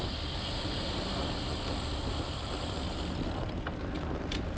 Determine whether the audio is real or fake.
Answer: real